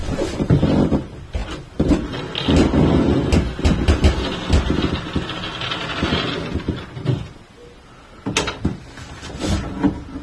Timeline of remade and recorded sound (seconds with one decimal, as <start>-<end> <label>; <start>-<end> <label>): 0.0-10.2 recorded